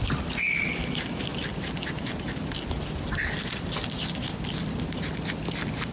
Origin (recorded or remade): recorded